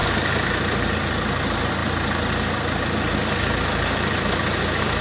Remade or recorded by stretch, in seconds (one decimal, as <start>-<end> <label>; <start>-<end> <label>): 0.0-5.0 recorded